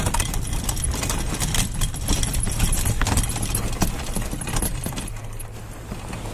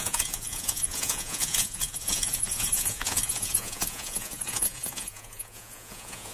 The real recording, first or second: first